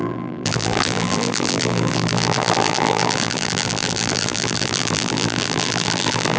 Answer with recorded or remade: remade